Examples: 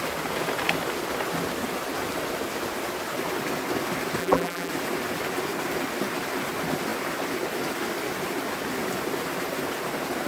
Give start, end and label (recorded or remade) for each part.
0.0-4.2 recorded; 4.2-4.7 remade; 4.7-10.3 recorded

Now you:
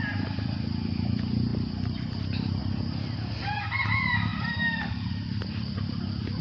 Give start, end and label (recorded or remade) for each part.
0.0-1.5 recorded; 1.5-2.2 remade; 2.2-4.3 recorded; 4.3-6.4 remade